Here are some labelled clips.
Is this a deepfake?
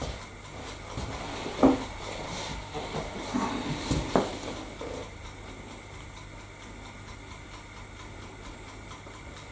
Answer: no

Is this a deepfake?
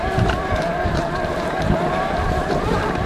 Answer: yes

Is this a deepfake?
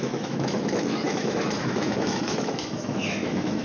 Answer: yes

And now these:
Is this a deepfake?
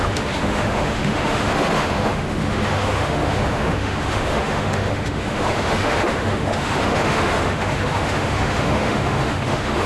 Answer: yes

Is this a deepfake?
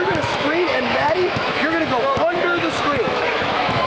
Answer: yes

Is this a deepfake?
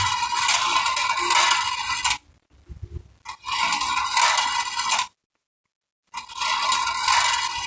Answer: no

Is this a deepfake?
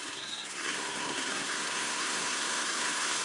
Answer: yes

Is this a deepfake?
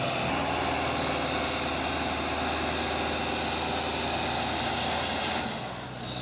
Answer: no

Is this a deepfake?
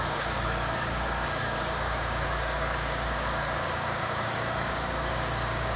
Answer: yes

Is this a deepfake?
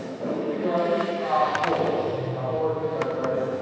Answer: yes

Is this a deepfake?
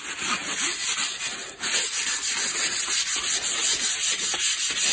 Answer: no